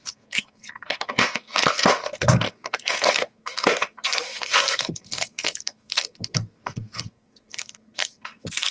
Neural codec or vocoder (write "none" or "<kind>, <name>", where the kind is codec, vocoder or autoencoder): codec, SNAC